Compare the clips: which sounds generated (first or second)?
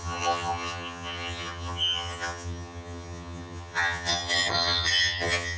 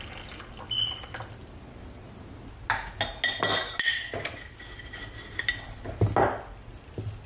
first